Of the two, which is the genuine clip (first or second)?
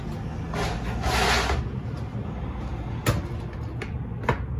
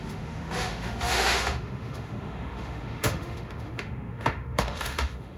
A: first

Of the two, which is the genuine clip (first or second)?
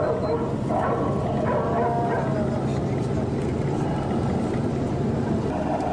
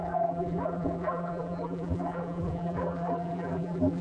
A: first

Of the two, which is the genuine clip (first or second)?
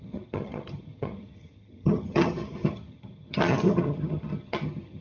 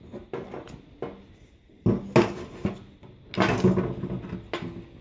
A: second